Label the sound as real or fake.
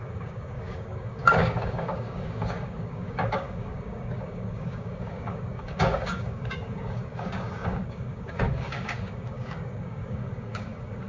fake